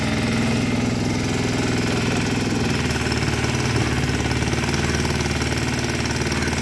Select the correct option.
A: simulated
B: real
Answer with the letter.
B